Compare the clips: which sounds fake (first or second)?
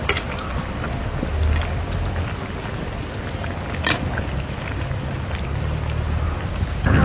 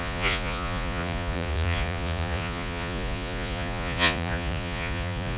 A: second